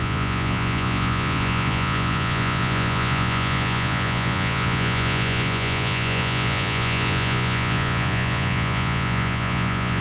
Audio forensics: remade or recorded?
remade